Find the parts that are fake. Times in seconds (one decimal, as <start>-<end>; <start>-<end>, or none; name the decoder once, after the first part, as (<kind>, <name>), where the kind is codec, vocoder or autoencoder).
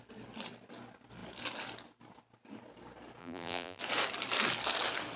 3.2-3.8 (vocoder, BigVGAN v2)